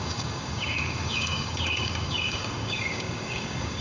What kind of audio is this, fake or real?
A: fake